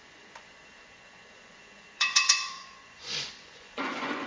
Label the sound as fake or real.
fake